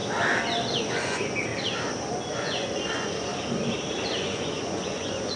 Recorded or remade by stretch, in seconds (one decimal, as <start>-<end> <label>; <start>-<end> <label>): 0.0-0.8 recorded; 0.8-1.5 remade; 1.5-2.3 recorded; 2.3-3.3 remade; 3.3-4.2 recorded; 4.2-5.4 remade